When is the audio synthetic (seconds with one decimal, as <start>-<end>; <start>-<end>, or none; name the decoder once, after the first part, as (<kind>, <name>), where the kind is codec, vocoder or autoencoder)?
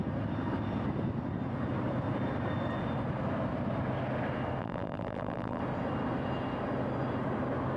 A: 4.6-5.6 (vocoder, BigVGAN v2)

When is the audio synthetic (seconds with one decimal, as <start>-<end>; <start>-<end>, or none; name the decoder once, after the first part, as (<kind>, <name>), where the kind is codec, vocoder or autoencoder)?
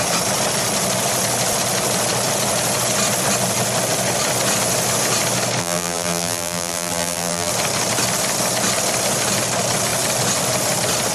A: 5.6-7.5 (vocoder, BigVGAN v2)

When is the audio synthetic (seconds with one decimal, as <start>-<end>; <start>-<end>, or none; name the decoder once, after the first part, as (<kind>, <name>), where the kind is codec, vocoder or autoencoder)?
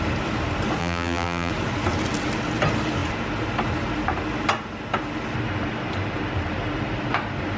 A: 0.8-1.5 (vocoder, BigVGAN v2)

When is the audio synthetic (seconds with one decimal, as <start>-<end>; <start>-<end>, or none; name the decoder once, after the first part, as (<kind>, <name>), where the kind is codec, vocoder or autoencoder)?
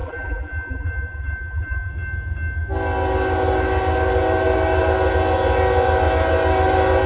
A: 0.0-1.9 (vocoder, BigVGAN v2)